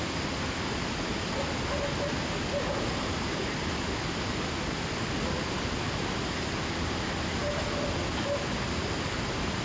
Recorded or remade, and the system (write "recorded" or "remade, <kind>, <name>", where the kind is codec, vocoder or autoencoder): recorded